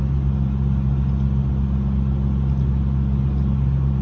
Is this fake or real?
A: real